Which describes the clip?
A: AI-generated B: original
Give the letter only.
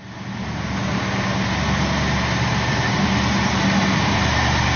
B